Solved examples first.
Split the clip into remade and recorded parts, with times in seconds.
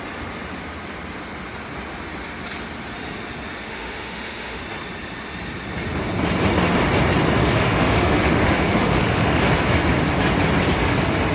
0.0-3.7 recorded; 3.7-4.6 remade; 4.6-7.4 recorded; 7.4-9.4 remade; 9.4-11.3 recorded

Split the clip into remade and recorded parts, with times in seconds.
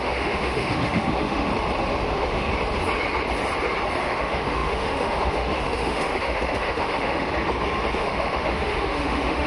0.0-1.5 remade; 1.5-2.1 recorded; 2.1-2.5 remade; 2.5-4.0 recorded; 4.0-7.3 remade; 7.3-7.9 recorded; 7.9-9.5 remade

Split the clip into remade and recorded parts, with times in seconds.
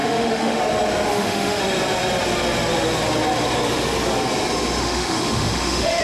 0.0-0.6 remade; 0.6-1.1 recorded; 1.1-1.6 remade; 1.6-4.8 recorded; 4.8-6.0 remade